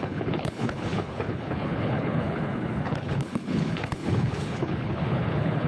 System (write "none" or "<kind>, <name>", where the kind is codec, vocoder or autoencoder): codec, HILCodec